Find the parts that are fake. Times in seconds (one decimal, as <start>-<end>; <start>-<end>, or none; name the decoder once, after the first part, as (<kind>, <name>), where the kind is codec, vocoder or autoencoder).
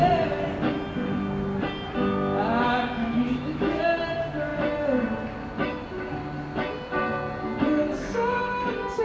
3.0-3.8 (autoencoder, DAC-VAE)